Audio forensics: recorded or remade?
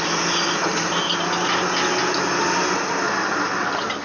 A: recorded